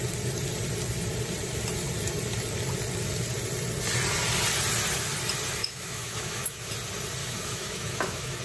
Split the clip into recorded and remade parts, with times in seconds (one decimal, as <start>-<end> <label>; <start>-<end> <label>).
0.0-5.6 recorded; 5.6-6.7 remade; 6.7-7.2 recorded; 7.2-8.4 remade